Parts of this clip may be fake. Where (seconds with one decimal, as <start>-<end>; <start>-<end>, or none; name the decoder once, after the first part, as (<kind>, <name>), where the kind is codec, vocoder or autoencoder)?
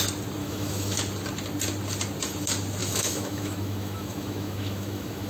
0.4-1.0 (autoencoder, DAC-VAE); 2.8-5.3